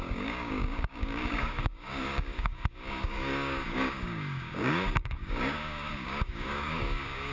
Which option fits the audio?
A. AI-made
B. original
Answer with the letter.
A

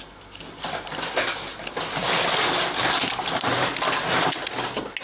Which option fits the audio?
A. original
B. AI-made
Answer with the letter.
A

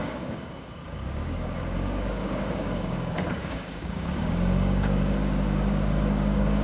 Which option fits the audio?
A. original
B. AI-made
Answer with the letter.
B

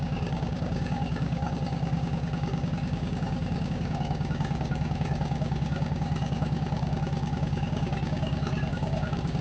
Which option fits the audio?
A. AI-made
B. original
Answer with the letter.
A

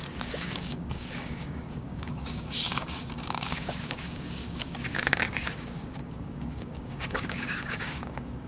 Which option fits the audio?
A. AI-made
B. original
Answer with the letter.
A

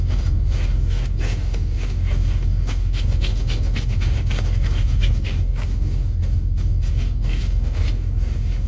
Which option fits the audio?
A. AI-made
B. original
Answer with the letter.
A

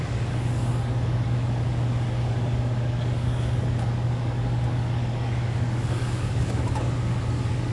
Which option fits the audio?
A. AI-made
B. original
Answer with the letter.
A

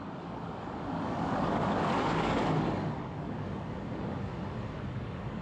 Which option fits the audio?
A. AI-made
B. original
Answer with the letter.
A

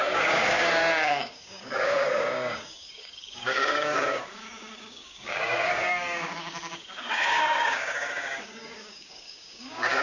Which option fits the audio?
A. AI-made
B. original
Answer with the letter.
A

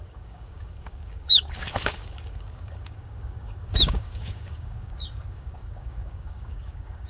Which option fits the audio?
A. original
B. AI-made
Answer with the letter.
B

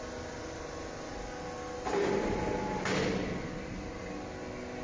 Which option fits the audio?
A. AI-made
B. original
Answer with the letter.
B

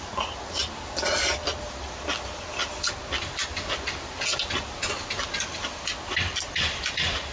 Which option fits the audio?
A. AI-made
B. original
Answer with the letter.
B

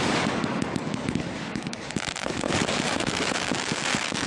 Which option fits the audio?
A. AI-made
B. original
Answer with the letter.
A